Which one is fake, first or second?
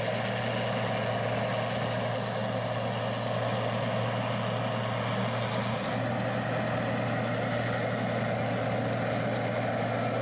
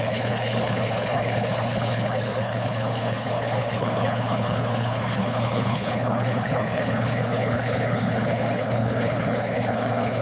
second